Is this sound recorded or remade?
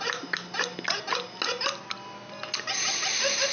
recorded